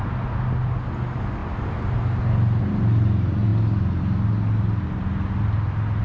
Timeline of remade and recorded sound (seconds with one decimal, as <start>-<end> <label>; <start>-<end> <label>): 0.0-6.0 recorded